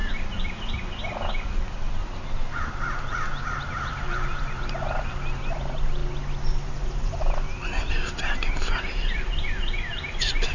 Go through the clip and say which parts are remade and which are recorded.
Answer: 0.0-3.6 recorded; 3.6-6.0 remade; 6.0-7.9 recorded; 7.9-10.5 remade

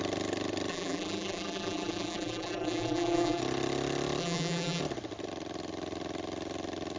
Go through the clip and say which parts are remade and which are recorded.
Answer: 0.0-0.7 recorded; 0.7-3.4 remade; 3.4-4.2 recorded; 4.2-4.8 remade; 4.8-7.0 recorded

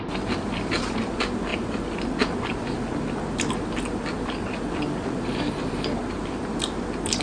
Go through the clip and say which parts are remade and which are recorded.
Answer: 0.0-7.2 recorded

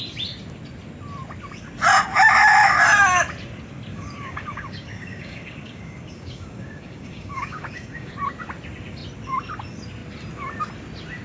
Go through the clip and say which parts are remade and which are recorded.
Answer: 0.0-3.9 recorded; 3.9-8.1 remade; 8.1-11.2 recorded